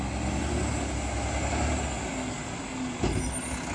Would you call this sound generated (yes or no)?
no